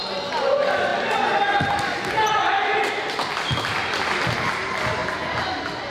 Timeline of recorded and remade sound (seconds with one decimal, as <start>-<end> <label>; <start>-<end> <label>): 0.0-5.9 recorded